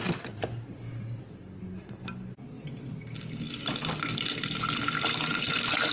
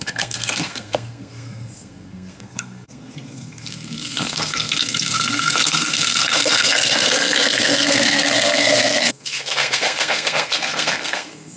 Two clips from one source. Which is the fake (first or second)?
second